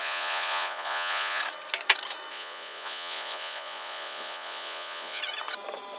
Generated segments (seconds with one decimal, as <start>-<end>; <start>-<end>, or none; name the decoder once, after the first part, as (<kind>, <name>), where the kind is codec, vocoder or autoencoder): 0.0-1.4 (vocoder, Vocos); 2.3-5.2